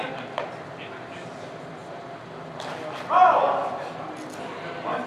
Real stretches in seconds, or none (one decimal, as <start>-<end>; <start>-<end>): 0.0-1.8; 2.7-5.1